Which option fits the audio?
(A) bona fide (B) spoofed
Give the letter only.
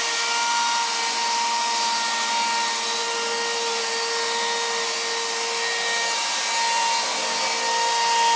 A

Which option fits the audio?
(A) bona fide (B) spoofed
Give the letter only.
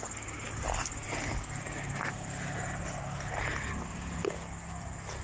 A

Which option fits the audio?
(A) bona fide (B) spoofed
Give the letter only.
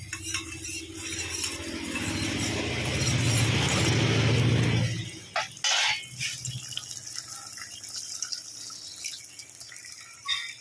A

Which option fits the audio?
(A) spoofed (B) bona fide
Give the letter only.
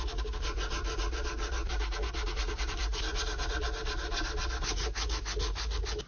B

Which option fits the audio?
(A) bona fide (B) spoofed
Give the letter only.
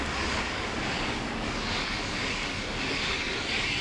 B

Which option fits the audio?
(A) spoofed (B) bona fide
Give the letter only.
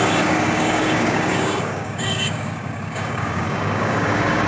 A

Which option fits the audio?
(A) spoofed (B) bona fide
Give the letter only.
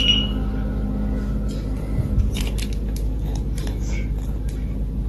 B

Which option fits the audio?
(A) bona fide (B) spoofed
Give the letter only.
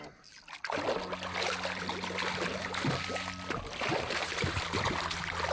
A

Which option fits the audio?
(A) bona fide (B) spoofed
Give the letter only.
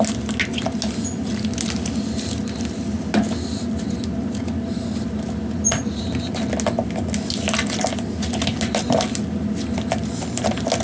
A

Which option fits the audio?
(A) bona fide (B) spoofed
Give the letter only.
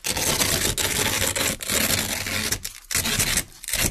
A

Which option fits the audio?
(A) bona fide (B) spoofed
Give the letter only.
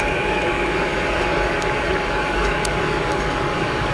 B